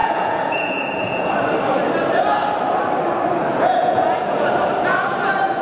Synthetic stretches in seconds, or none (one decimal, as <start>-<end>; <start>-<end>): 0.0-1.3; 3.5-4.5